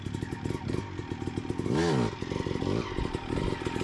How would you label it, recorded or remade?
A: recorded